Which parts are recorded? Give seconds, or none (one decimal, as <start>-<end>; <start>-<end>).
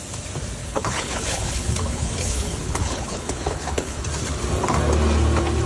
0.0-0.6; 4.0-5.7